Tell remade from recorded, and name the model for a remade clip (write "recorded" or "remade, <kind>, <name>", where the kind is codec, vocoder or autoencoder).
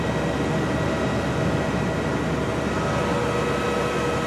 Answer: recorded